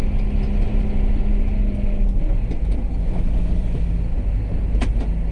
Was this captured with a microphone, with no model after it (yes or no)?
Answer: yes